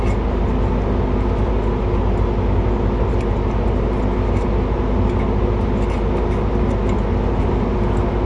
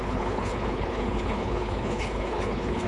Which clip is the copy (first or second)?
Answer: second